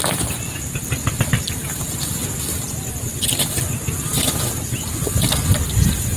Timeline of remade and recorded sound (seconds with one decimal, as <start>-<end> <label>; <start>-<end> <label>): 0.0-6.2 recorded